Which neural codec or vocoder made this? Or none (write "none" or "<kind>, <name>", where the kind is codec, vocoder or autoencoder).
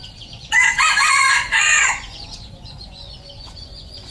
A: vocoder, Vocos